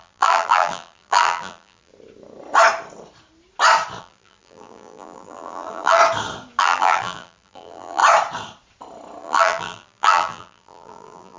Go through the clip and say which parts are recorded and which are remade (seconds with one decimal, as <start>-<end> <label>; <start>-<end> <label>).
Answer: 0.0-1.9 remade; 1.9-4.0 recorded; 4.0-6.0 remade; 6.0-6.6 recorded; 6.6-8.0 remade; 8.0-9.2 recorded; 9.2-11.4 remade